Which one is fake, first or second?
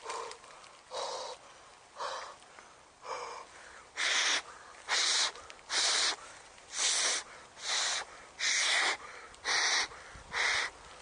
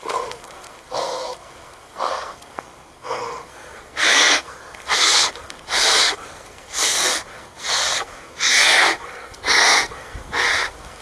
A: second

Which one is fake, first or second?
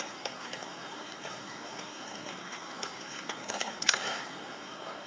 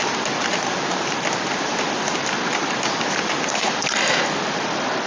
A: first